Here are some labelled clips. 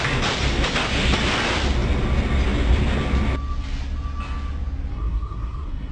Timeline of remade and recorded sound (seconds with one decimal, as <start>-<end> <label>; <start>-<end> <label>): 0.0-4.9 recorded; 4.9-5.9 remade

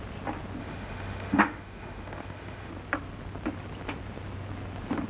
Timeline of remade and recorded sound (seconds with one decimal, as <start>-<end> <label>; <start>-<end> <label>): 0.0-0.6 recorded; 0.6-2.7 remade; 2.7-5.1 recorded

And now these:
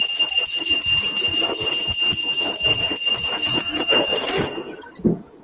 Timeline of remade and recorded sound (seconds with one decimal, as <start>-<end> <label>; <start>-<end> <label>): 0.0-3.5 recorded; 3.5-4.8 remade; 4.8-5.4 recorded

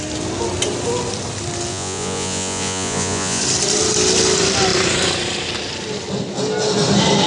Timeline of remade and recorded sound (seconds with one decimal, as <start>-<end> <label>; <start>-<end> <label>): 0.0-1.7 recorded; 1.7-3.4 remade; 3.4-7.3 recorded